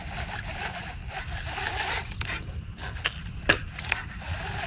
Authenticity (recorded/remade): recorded